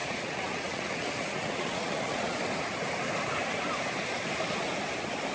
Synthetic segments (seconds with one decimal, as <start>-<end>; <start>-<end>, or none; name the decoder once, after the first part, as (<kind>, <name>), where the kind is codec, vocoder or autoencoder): 0.0-2.4 (vocoder, Vocos)